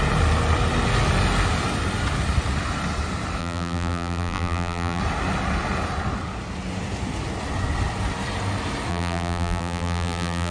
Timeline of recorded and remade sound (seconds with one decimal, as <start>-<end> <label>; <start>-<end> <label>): 0.0-3.4 recorded; 3.4-5.0 remade; 5.0-8.9 recorded; 8.9-10.5 remade